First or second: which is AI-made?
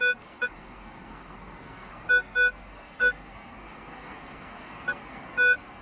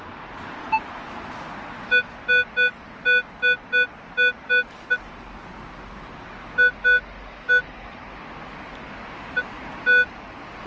first